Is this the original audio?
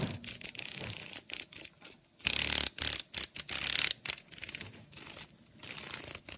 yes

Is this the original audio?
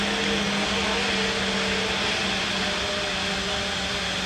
yes